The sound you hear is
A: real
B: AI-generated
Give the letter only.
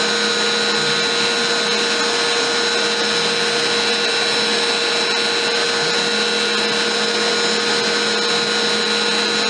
A